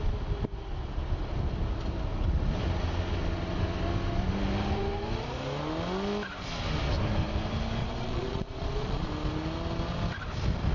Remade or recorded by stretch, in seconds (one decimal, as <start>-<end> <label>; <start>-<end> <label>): 0.0-7.8 recorded; 7.8-9.1 remade; 9.1-10.7 recorded